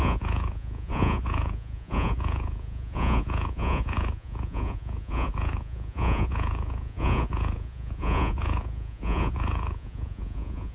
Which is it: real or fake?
fake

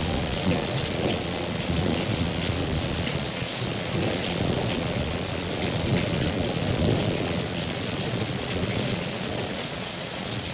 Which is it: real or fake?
fake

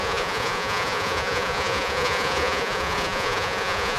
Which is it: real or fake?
fake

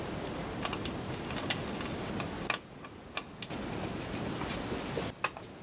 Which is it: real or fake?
real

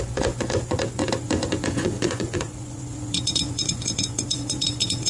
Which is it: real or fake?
fake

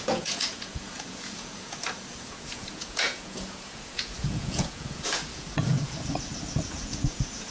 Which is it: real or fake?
fake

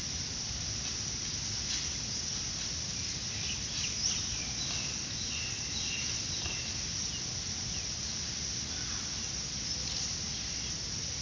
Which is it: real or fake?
real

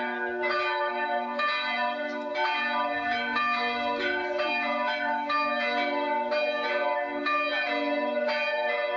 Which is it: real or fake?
real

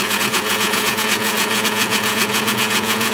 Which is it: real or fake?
fake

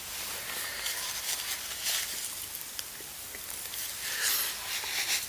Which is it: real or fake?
real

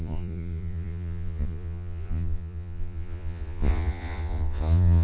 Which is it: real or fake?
fake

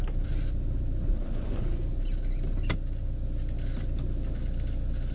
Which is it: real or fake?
real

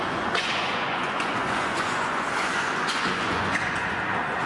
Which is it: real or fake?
fake